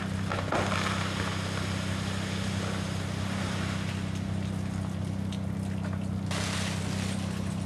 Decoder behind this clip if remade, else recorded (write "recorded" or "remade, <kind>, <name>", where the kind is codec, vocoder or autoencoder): recorded